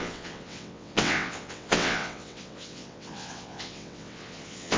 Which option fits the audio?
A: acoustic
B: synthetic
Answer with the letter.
B